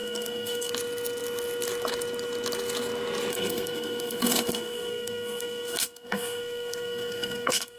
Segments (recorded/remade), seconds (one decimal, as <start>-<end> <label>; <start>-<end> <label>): 0.0-0.7 remade; 0.7-3.3 recorded; 3.3-7.8 remade